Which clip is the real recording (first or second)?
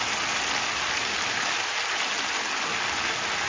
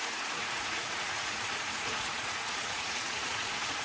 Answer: first